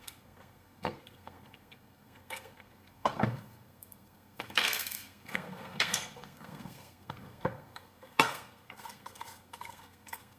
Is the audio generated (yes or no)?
yes